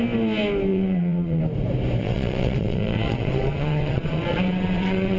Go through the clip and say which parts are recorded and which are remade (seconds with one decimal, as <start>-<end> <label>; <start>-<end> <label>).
0.0-0.7 recorded; 0.7-1.4 remade; 1.4-2.0 recorded; 2.0-5.2 remade